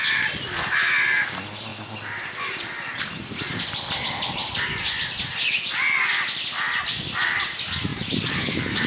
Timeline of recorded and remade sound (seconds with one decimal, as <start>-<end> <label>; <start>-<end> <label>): 0.0-7.9 recorded; 7.9-8.9 remade